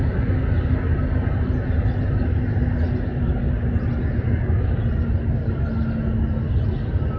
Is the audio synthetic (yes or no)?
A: no